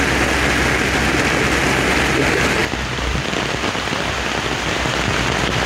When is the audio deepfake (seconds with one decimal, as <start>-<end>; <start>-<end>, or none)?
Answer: 2.6-3.3